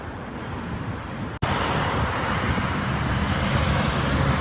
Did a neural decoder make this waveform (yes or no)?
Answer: no